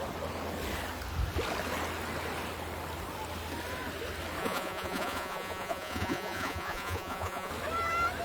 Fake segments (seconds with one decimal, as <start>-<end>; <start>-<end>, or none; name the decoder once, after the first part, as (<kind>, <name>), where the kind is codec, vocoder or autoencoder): 4.4-7.5 (vocoder, Vocos)